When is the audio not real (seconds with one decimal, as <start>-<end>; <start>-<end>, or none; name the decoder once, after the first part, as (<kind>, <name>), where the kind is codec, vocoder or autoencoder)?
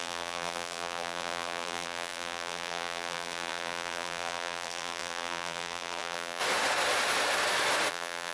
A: 0.0-6.4 (vocoder, BigVGAN v2); 7.9-8.3